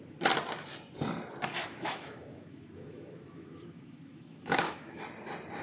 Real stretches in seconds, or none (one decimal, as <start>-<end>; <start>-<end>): 0.0-1.6; 5.0-5.6